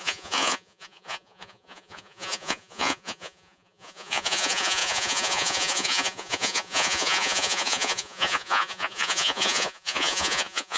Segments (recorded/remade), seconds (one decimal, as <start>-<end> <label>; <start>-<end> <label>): 0.0-10.8 remade